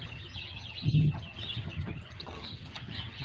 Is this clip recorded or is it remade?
remade